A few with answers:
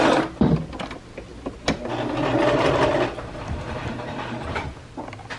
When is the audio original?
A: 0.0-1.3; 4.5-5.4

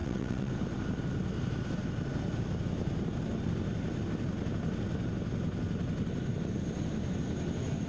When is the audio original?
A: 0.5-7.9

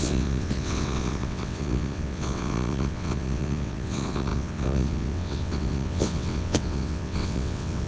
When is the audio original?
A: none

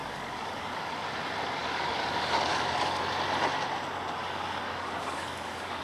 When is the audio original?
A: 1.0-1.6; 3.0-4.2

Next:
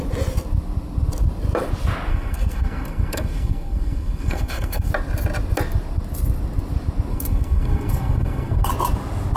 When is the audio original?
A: 0.0-2.1; 4.9-7.1; 8.7-9.4

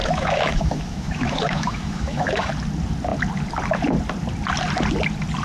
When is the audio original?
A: 2.5-5.4